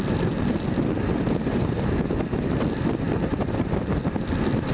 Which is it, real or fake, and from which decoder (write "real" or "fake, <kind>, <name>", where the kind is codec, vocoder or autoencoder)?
real